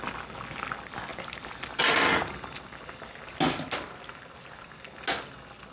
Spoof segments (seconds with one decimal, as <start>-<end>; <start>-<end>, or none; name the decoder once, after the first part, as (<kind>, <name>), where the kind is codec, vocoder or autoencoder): none